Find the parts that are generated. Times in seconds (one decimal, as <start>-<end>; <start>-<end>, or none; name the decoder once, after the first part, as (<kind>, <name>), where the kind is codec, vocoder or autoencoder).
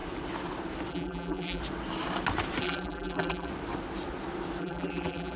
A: 0.9-1.6 (vocoder, BigVGAN v2); 2.6-3.5; 4.6-5.4